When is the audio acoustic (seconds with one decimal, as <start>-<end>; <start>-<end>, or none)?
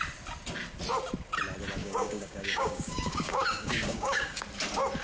0.0-1.8; 4.4-5.0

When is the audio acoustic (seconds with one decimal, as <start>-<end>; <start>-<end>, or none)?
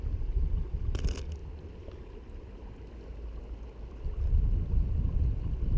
0.0-5.8